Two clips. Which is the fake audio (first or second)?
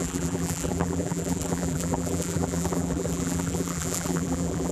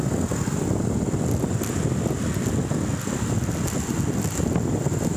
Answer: first